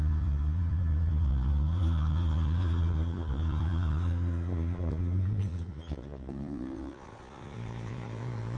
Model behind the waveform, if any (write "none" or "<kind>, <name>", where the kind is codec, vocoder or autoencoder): vocoder, Vocos